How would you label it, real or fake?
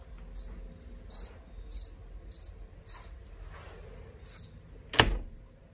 real